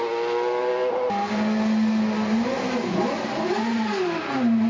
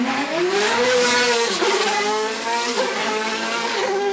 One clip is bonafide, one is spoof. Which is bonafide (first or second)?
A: first